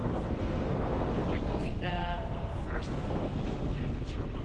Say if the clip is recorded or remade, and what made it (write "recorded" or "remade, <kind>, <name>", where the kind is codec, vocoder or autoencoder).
remade, codec, SNAC